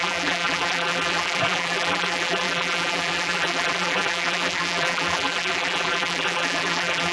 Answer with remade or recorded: remade